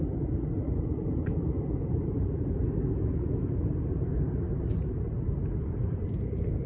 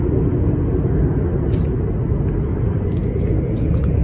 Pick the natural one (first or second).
second